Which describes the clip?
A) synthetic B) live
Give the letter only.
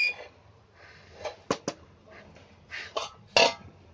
B